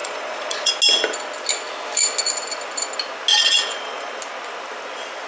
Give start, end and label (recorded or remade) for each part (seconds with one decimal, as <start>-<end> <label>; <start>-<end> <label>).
0.0-0.7 remade; 0.7-3.3 recorded; 3.3-4.2 remade; 4.2-5.3 recorded